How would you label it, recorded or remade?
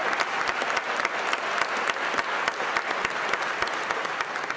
recorded